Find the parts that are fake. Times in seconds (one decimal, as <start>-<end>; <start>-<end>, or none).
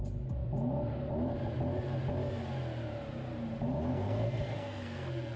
3.9-5.4